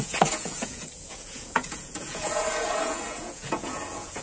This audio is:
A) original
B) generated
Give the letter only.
B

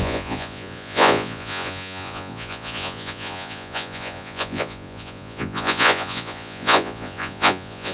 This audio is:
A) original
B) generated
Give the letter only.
B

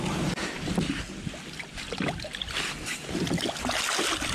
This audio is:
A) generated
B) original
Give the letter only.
B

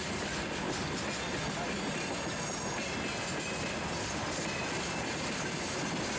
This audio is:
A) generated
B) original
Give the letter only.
B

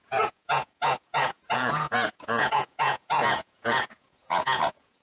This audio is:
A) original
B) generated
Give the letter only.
B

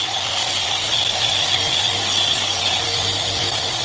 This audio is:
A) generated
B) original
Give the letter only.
B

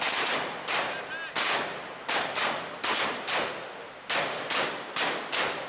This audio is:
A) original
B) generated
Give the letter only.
A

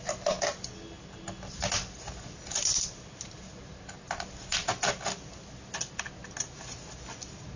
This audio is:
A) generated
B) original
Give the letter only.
B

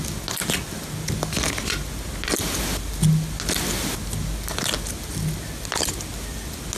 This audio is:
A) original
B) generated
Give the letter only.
A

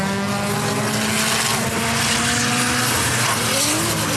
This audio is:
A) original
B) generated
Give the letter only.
A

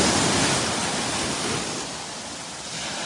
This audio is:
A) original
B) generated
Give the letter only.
A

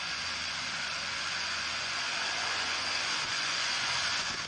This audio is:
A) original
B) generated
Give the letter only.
B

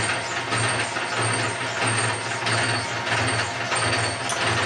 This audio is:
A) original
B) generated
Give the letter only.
A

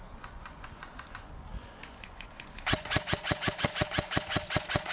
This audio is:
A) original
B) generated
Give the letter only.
B